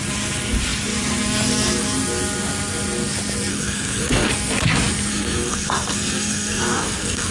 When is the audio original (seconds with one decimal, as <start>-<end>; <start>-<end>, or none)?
0.0-3.5; 4.3-5.1